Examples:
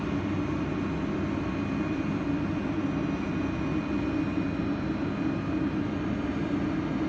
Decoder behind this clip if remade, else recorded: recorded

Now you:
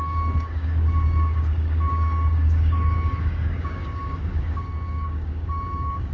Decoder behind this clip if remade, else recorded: remade, codec, DAC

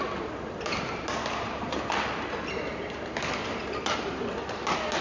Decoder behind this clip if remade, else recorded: recorded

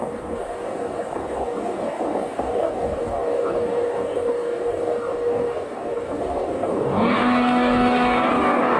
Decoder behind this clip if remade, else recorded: remade, codec, DAC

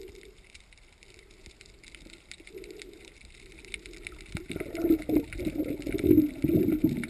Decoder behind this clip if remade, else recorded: recorded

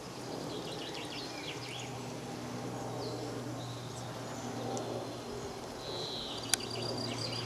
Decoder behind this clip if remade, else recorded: recorded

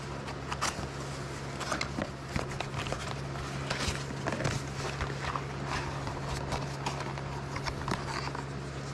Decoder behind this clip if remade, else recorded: recorded